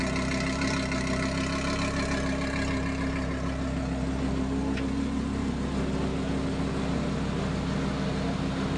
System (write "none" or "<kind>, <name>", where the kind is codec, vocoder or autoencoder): none